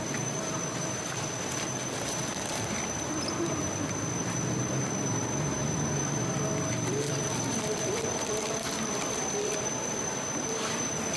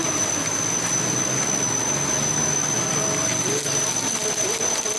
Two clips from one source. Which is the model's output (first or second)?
first